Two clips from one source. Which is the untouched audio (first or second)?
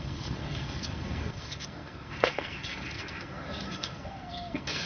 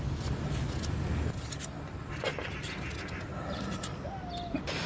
second